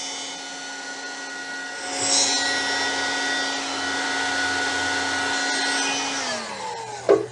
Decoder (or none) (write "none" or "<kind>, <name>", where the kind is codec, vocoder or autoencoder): none